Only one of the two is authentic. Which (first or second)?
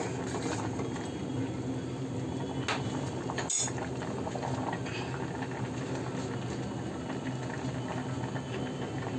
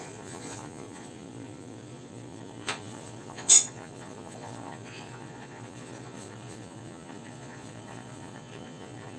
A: first